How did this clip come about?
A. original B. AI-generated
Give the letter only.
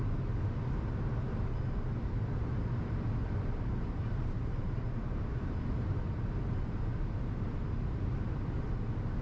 A